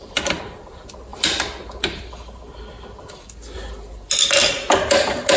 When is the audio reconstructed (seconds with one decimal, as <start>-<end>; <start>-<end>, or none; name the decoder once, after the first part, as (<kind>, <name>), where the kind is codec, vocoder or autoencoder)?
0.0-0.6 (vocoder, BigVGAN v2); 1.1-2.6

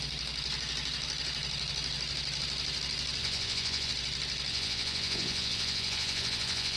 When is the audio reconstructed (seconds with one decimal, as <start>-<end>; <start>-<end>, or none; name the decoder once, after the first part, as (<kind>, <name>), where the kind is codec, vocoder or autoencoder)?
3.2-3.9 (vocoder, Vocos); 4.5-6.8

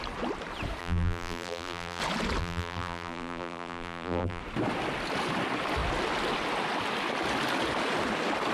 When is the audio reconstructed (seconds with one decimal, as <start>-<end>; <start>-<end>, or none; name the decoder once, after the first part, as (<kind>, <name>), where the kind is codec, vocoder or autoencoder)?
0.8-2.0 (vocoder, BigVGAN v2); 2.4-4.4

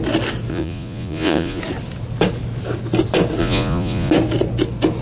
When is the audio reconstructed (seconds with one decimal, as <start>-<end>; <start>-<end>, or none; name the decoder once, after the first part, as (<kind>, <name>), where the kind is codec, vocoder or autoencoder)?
0.5-1.6 (vocoder, Vocos); 3.4-4.1